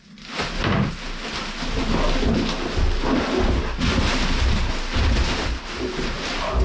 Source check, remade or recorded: recorded